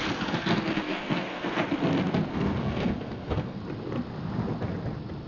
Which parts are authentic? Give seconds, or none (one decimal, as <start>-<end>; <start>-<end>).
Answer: 0.0-0.7; 1.6-2.3; 3.6-5.3